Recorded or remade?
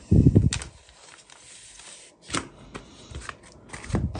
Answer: recorded